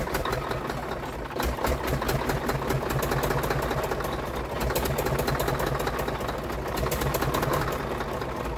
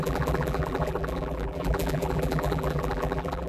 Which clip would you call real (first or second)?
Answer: first